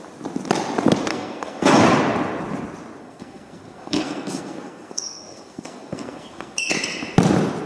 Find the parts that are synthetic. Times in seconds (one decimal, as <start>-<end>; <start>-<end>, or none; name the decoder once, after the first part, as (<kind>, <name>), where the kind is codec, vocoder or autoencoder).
1.1-1.8 (codec, SNAC); 3.0-6.7

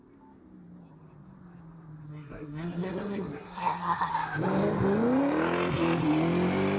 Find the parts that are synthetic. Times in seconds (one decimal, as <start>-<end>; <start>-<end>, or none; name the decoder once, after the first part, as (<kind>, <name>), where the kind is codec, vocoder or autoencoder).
2.1-4.1 (codec, SNAC)

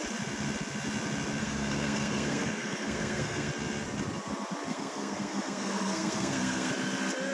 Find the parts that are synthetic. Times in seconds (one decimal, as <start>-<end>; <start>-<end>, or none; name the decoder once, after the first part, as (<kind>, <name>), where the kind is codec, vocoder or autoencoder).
1.4-3.5 (codec, SNAC); 4.7-6.7

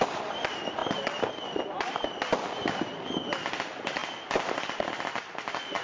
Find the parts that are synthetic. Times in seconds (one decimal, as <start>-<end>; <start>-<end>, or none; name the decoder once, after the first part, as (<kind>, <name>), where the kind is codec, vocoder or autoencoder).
none